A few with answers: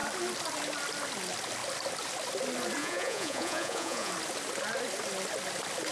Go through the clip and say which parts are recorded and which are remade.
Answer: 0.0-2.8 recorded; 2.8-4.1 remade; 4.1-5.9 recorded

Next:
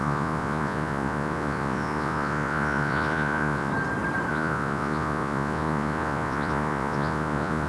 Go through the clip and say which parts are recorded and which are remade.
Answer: 0.0-3.7 remade; 3.7-4.3 recorded; 4.3-7.7 remade

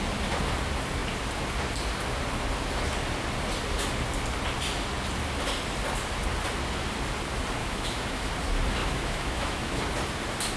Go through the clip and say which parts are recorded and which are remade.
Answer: 0.0-7.6 recorded; 7.6-8.3 remade; 8.3-8.8 recorded; 8.8-9.8 remade; 9.8-10.6 recorded

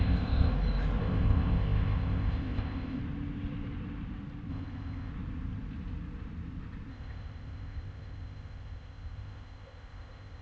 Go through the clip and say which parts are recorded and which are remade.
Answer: 0.0-0.5 remade; 0.5-1.0 recorded; 1.0-3.0 remade; 3.0-4.5 recorded; 4.5-5.1 remade; 5.1-6.9 recorded; 6.9-10.4 remade

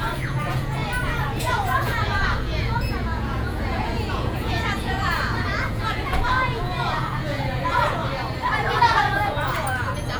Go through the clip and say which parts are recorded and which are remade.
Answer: 0.0-0.8 remade; 0.8-1.4 recorded; 1.4-8.0 remade; 8.0-8.8 recorded; 8.8-10.2 remade

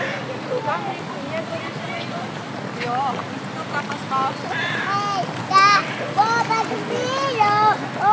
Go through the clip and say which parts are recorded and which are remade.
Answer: 0.0-8.1 recorded

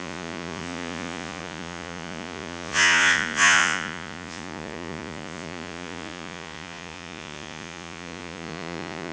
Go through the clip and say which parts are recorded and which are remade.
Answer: 0.0-9.1 remade

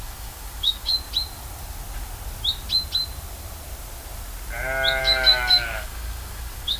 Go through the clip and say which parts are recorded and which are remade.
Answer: 0.0-0.9 remade; 0.9-5.0 recorded; 5.0-6.8 remade